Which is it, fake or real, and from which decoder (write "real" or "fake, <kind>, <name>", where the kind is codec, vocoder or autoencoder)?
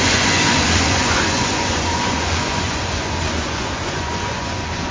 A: fake, vocoder, Vocos